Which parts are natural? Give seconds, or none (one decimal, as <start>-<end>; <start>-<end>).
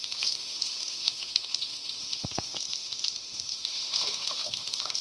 none